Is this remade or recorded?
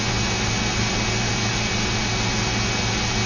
recorded